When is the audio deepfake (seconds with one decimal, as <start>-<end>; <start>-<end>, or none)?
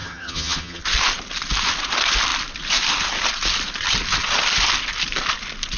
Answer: 0.0-0.8